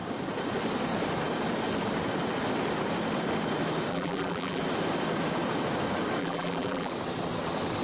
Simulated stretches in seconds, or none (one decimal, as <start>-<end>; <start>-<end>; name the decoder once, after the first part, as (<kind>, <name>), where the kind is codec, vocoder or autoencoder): 3.9-4.6 (vocoder, BigVGAN v2); 6.2-6.9